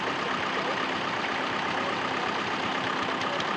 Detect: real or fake real